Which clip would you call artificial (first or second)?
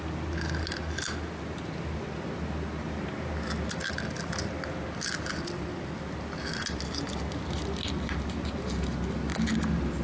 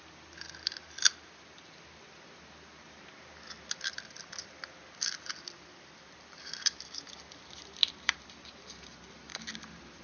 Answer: second